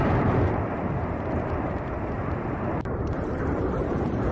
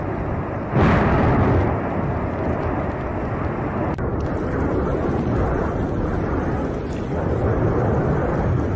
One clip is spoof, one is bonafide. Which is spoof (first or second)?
first